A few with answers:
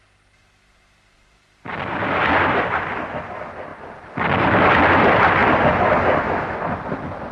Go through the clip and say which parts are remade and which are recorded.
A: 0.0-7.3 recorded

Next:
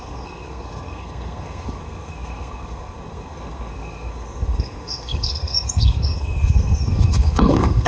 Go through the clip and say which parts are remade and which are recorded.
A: 0.0-7.9 remade

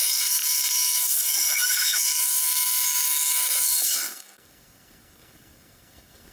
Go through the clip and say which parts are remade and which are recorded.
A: 0.0-6.3 remade